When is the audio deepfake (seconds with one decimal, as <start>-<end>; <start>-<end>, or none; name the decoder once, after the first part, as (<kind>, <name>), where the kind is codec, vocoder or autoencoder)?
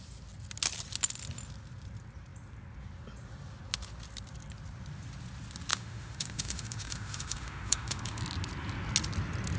5.7-8.2 (autoencoder, DAC-VAE)